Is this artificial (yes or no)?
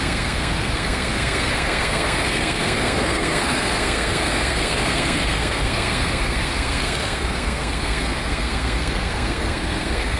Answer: yes